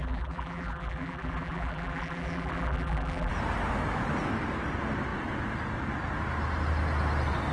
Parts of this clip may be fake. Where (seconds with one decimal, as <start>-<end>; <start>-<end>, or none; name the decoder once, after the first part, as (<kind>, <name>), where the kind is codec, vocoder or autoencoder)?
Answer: 0.0-3.3 (vocoder, BigVGAN v2)